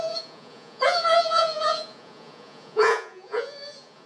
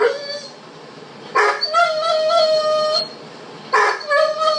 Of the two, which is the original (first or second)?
second